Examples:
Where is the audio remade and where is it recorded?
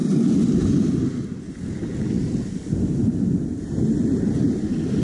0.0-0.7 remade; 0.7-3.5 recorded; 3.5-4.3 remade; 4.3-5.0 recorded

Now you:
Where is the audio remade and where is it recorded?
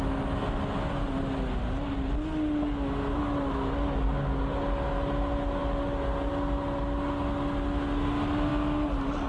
0.0-9.3 recorded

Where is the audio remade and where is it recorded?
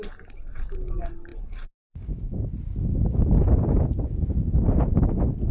0.0-5.5 recorded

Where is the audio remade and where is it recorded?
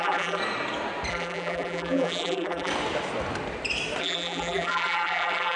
0.0-0.4 remade; 0.4-1.1 recorded; 1.1-2.7 remade; 2.7-4.0 recorded; 4.0-5.6 remade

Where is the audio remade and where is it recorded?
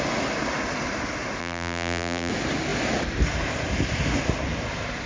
0.0-1.4 recorded; 1.4-2.3 remade; 2.3-5.1 recorded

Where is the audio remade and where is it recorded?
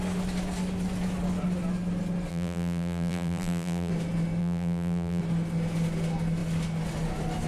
0.0-2.3 recorded; 2.3-3.9 remade; 3.9-4.4 recorded; 4.4-5.2 remade; 5.2-7.5 recorded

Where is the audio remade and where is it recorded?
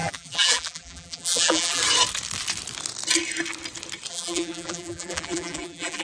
0.0-1.8 remade; 1.8-4.1 recorded; 4.1-6.0 remade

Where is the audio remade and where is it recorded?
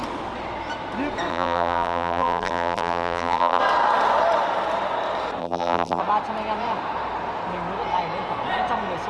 0.0-1.3 recorded; 1.3-3.6 remade; 3.6-5.4 recorded; 5.4-6.0 remade; 6.0-9.1 recorded